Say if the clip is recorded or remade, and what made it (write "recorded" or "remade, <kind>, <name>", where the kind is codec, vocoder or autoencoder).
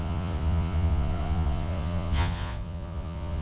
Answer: remade, vocoder, Vocos